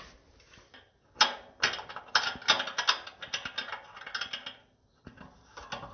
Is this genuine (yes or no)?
yes